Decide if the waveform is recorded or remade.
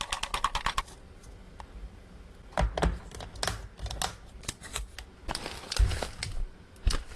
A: recorded